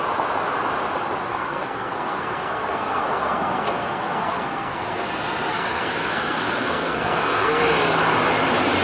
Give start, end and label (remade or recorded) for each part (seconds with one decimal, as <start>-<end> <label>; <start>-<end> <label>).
0.0-1.3 recorded; 1.3-5.1 remade; 5.1-5.5 recorded; 5.5-7.6 remade; 7.6-8.8 recorded